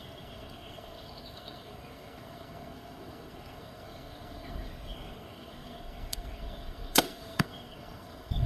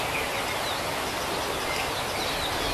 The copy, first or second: first